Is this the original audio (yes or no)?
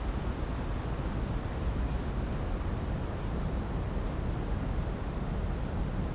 yes